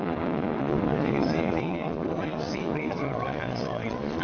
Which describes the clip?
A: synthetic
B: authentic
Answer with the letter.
A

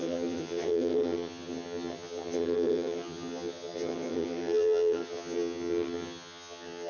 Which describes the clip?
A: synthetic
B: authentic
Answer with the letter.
A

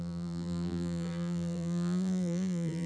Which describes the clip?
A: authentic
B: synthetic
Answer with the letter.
B